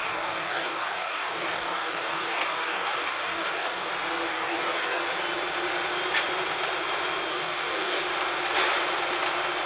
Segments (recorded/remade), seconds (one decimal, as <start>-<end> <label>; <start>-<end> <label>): 0.0-3.9 remade; 3.9-4.3 recorded; 4.3-5.0 remade; 5.0-7.3 recorded; 7.3-8.0 remade; 8.0-9.7 recorded